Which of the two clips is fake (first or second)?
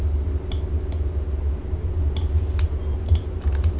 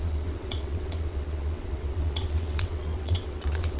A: second